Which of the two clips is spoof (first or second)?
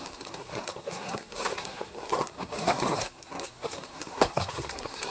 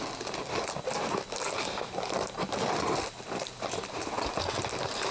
first